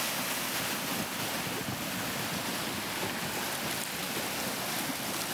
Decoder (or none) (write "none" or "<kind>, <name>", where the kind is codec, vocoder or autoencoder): none